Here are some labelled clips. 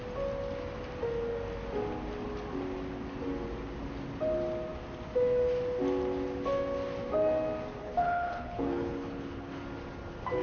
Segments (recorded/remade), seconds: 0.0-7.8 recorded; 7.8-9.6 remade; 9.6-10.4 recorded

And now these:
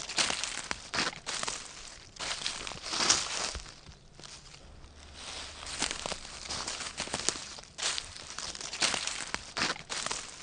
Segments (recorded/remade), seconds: 0.0-7.4 recorded; 7.4-9.2 remade; 9.2-10.4 recorded

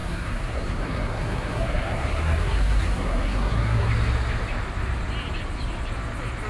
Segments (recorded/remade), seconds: 0.0-3.9 remade; 3.9-6.5 recorded

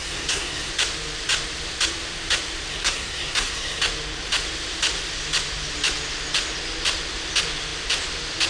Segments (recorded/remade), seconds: 0.0-0.7 remade; 0.7-2.7 recorded; 2.7-3.8 remade; 3.8-8.5 recorded

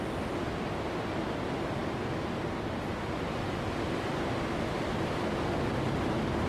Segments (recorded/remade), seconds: 0.0-6.5 recorded

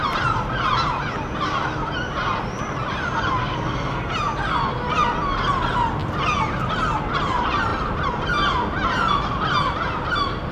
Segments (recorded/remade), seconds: 0.0-3.4 recorded; 3.4-4.1 remade; 4.1-10.5 recorded